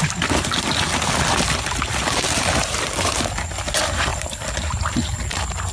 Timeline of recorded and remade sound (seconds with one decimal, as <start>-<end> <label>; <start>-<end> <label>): 0.0-2.5 remade; 2.5-4.1 recorded; 4.1-4.9 remade; 4.9-5.7 recorded